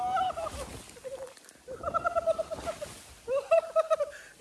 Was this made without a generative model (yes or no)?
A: yes